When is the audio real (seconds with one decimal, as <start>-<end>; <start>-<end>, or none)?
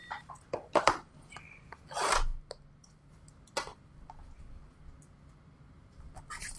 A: 1.1-3.7; 4.4-6.6